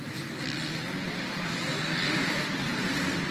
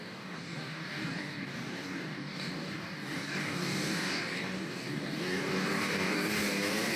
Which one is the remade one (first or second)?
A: second